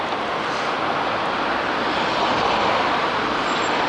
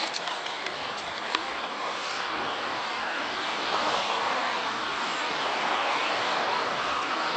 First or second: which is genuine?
first